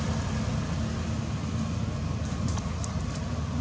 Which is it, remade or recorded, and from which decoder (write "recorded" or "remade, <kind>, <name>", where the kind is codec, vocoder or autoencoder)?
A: recorded